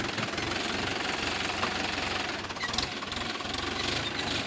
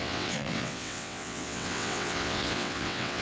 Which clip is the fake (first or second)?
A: second